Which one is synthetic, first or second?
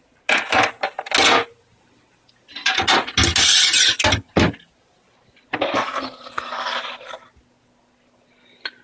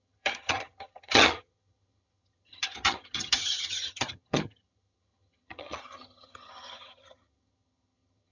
second